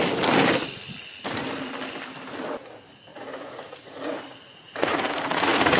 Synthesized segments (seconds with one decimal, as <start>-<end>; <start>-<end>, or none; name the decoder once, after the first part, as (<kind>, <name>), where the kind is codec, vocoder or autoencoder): 3.1-5.8 (vocoder, Vocos)